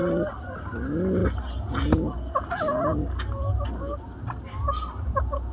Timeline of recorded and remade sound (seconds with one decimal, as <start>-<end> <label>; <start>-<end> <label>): 0.0-5.5 recorded